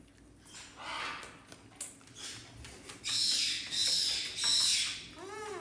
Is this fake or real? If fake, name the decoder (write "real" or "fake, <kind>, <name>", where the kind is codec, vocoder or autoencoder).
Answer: real